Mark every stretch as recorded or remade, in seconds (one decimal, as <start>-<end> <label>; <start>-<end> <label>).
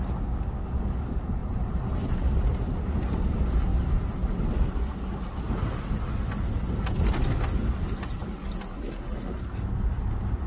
0.0-1.4 recorded; 1.4-2.1 remade; 2.1-3.7 recorded; 3.7-4.4 remade; 4.4-10.5 recorded